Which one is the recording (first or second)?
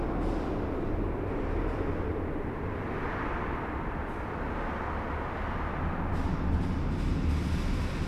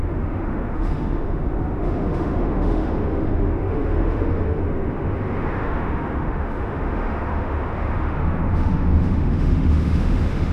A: first